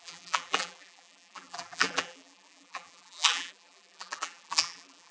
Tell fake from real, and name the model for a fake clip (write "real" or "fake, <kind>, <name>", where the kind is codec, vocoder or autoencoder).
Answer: fake, vocoder, BigVGAN v2